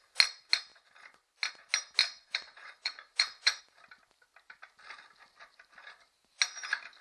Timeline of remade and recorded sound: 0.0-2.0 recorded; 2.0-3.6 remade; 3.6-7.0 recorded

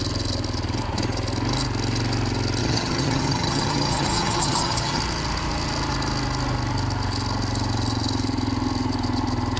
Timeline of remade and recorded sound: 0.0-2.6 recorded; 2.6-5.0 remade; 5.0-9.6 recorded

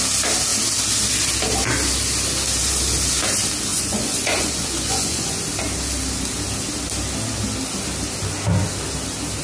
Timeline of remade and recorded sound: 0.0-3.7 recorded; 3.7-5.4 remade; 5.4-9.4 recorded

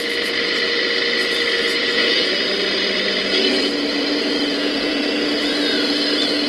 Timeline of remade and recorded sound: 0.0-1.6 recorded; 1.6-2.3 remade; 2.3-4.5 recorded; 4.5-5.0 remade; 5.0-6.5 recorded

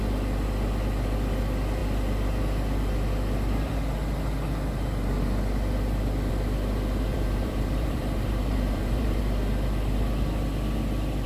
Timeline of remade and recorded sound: 0.0-7.1 recorded; 7.1-9.2 remade; 9.2-11.3 recorded

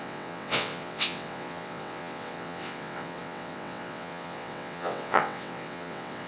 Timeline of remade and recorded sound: 0.0-6.3 remade